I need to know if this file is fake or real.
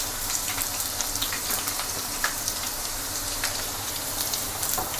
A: fake